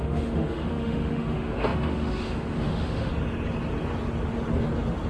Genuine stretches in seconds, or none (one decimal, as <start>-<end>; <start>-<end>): 3.1-5.1